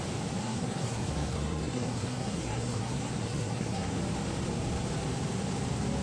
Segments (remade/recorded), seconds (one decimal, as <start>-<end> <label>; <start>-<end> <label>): 0.0-0.4 recorded; 0.4-4.0 remade; 4.0-6.0 recorded